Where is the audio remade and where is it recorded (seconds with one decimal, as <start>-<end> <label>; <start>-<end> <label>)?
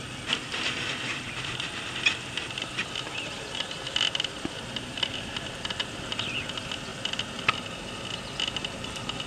0.0-6.9 remade; 6.9-8.2 recorded; 8.2-9.3 remade